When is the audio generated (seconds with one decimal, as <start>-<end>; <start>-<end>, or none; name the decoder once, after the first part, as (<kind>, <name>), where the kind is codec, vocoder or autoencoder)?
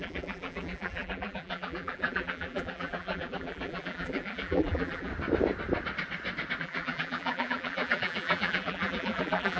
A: 0.0-5.1 (vocoder, BigVGAN v2); 6.6-9.6